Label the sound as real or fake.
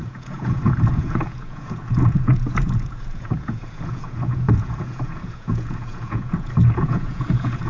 fake